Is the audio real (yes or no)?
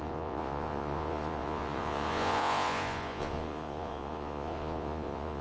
no